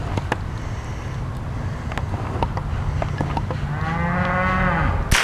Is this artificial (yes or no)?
no